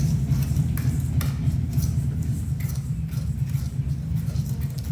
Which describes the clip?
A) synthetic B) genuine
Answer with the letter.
B